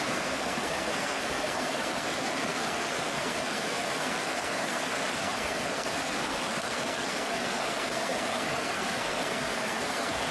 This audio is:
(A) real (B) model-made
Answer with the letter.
B